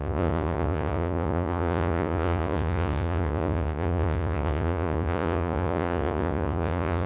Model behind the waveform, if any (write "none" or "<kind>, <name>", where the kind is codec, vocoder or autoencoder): vocoder, Vocos